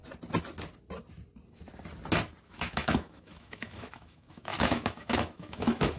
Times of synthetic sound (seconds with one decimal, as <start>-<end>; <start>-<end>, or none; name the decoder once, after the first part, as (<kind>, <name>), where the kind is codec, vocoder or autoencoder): 2.4-6.0 (autoencoder, DAC-VAE)